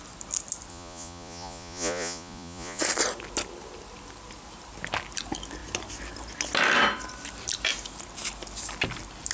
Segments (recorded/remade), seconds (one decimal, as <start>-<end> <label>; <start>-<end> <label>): 0.0-0.7 recorded; 0.7-2.8 remade; 2.8-9.3 recorded